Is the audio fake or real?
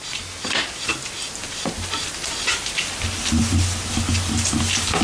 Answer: real